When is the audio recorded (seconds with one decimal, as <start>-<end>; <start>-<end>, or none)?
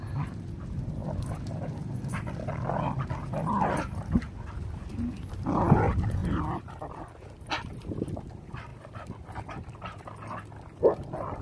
0.0-4.9; 5.5-6.2; 7.0-8.7; 9.7-11.4